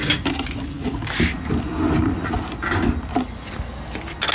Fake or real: real